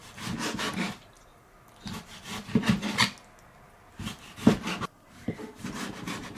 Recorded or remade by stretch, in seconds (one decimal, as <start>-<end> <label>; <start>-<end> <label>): 0.0-0.7 recorded; 0.7-1.3 remade; 1.3-5.1 recorded; 5.1-6.4 remade